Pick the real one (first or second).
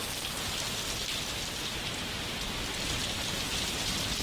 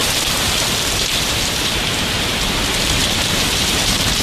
first